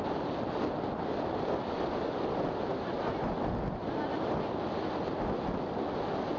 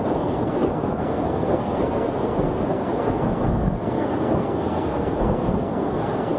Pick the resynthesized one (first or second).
second